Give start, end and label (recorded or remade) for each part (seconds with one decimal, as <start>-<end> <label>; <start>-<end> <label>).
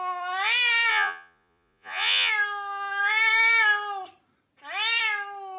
0.0-0.9 recorded; 0.9-2.3 remade; 2.3-5.6 recorded